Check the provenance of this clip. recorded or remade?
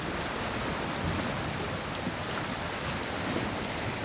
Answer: recorded